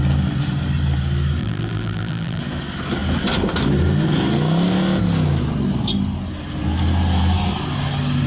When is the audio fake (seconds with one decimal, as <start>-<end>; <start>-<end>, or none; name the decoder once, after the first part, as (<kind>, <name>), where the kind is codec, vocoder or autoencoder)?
1.4-2.4 (vocoder, BigVGAN v2)